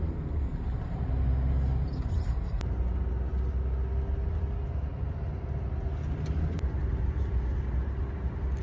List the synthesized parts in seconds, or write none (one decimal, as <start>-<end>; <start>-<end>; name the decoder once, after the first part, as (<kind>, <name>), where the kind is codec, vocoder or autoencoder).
none